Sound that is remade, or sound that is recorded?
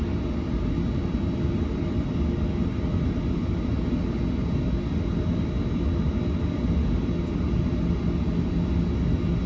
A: recorded